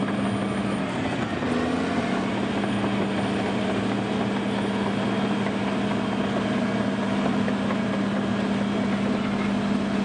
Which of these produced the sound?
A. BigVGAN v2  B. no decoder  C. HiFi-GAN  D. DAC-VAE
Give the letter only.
B